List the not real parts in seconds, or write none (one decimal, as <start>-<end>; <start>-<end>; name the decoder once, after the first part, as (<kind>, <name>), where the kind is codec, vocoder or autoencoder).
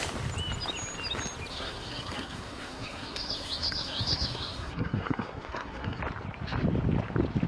1.5-6.0 (codec, SNAC)